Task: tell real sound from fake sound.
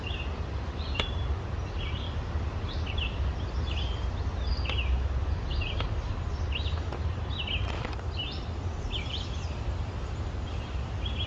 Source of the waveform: real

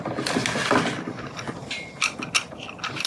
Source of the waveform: real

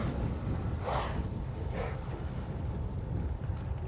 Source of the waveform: real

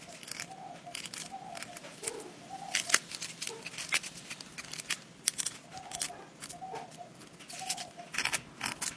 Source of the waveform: real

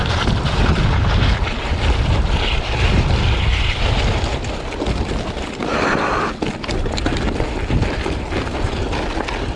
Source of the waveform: real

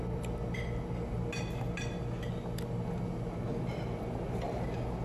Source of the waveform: real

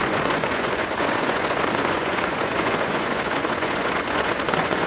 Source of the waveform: fake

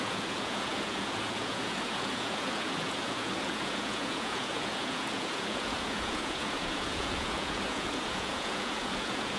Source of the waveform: fake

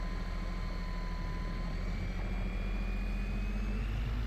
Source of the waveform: real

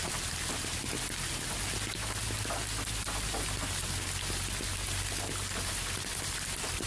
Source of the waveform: real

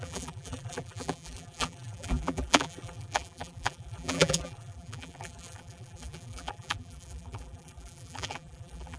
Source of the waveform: fake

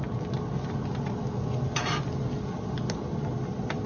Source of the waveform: real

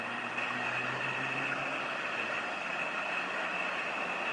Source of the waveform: real